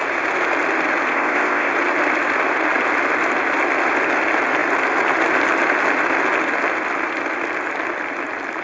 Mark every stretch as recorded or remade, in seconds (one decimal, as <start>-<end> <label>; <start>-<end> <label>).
0.0-1.1 recorded; 1.1-1.7 remade; 1.7-8.6 recorded